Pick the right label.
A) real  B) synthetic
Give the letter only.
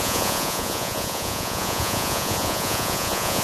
B